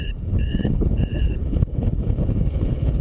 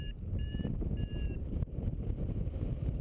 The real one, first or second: second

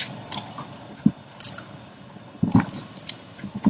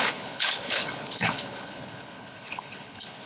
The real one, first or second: first